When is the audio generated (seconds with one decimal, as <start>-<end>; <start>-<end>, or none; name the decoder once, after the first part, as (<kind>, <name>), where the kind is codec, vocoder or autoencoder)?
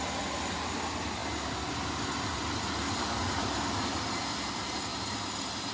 4.9-5.7 (vocoder, BigVGAN v2)